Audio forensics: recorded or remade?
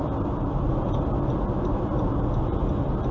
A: recorded